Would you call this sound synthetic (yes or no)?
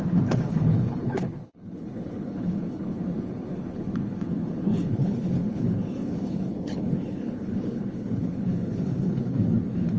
yes